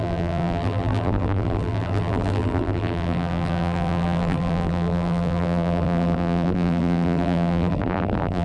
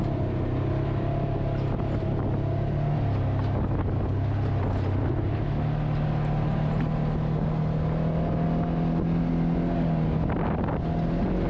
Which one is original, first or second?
second